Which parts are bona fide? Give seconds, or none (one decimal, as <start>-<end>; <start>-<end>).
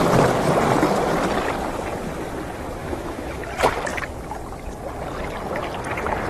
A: 0.0-2.8; 3.4-6.3